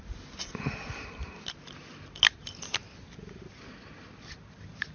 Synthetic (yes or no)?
no